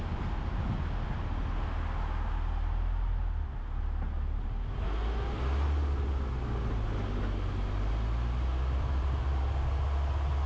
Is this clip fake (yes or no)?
no